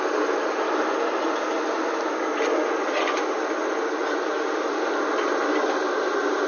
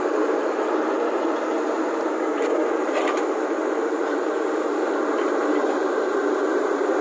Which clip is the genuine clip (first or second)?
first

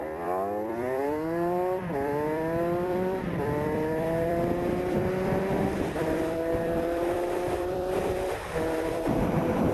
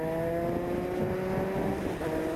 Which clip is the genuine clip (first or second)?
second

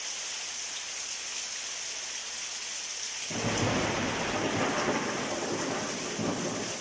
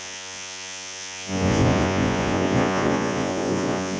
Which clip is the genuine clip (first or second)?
first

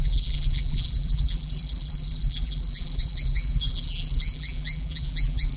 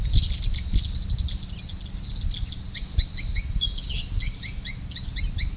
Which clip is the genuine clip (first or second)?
second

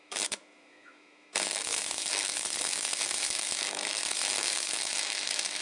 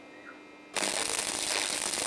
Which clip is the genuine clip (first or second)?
second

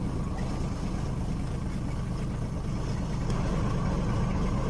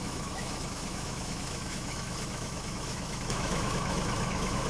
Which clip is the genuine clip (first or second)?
first